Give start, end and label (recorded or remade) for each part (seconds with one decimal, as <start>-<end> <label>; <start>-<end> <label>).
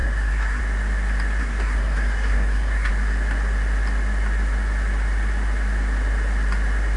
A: 0.0-0.6 remade; 0.6-1.4 recorded; 1.4-2.9 remade; 2.9-7.0 recorded